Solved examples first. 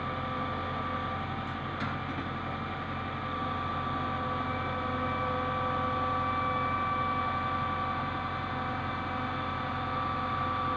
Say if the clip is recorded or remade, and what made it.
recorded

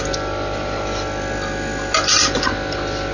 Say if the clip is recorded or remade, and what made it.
recorded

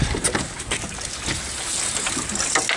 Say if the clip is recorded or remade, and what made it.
recorded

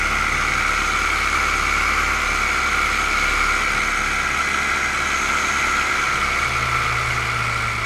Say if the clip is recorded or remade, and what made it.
recorded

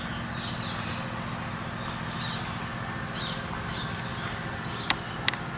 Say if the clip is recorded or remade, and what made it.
recorded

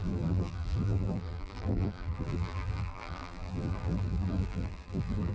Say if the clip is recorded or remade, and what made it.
remade, vocoder, BigVGAN v2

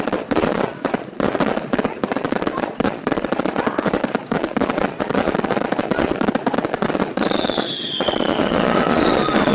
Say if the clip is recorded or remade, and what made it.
remade, vocoder, Vocos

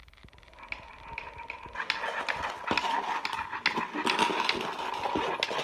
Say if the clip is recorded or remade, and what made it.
recorded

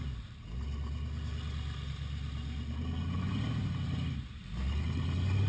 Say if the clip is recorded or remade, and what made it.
recorded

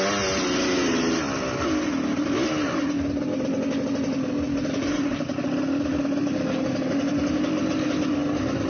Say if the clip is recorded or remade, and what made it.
recorded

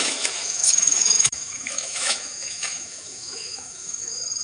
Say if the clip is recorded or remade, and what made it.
remade, autoencoder, DAC-VAE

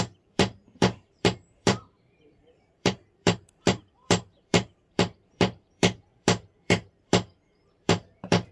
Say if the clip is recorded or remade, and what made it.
remade, vocoder, BigVGAN v2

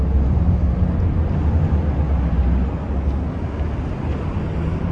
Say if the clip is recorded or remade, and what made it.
recorded